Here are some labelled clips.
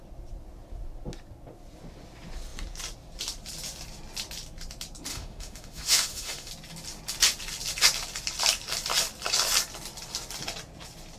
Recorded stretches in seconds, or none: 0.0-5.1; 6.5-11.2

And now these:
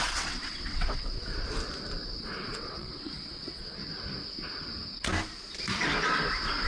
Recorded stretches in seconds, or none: 1.3-2.2; 3.8-6.7

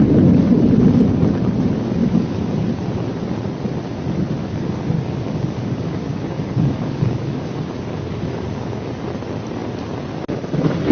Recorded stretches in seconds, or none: 0.0-2.0; 2.7-4.4; 8.9-10.9

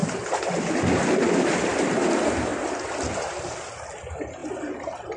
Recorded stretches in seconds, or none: 0.0-5.2